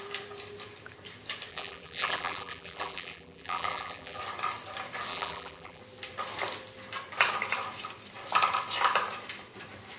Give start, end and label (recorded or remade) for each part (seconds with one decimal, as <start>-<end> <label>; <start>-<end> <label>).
0.0-1.5 recorded; 1.5-4.2 remade; 4.2-5.1 recorded; 5.1-5.8 remade; 5.8-10.0 recorded